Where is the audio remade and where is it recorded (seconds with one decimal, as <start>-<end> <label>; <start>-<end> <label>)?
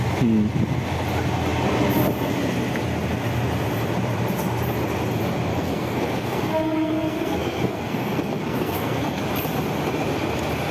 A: 0.0-5.5 recorded; 5.5-9.2 remade; 9.2-10.7 recorded